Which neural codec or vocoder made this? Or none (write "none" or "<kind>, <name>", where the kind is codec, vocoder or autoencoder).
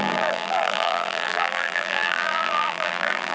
vocoder, BigVGAN v2